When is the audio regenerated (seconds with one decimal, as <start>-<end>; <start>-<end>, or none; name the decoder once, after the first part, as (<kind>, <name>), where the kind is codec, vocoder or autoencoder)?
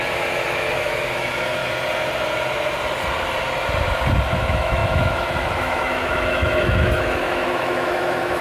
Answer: 0.0-1.6 (autoencoder, DAC-VAE); 4.3-8.4